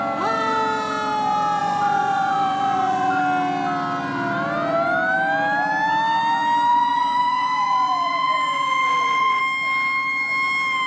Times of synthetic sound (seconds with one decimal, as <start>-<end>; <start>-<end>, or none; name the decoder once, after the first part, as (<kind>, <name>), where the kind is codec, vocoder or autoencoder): 1.6-3.2 (vocoder, Vocos); 6.7-9.4